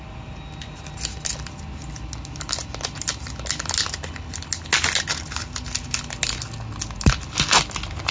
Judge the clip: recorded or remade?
recorded